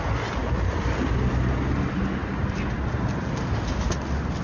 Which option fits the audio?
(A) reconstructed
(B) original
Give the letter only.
B